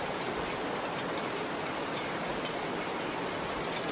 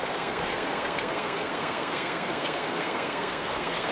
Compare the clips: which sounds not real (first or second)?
second